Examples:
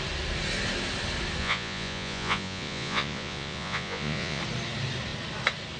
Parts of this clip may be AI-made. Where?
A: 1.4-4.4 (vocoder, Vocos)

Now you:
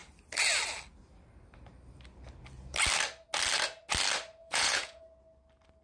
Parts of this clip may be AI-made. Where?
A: 4.4-5.0 (vocoder, Vocos)

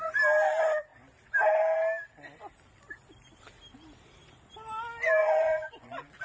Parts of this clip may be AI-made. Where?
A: 5.2-6.2 (vocoder, Vocos)

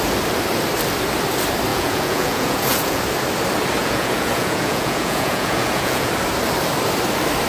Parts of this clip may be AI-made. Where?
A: 1.7-3.0 (vocoder, Vocos); 3.8-6.1